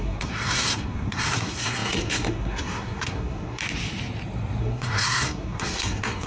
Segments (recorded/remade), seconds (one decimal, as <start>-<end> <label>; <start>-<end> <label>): 0.0-3.6 remade; 3.6-4.6 recorded; 4.6-6.3 remade

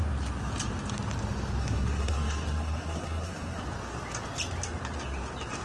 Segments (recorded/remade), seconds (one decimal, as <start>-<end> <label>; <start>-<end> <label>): 0.0-1.6 recorded; 1.6-3.6 remade; 3.6-5.6 recorded